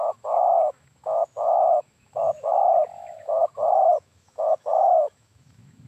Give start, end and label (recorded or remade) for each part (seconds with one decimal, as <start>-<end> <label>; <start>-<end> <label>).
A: 0.0-3.4 remade; 3.4-4.0 recorded; 4.0-5.9 remade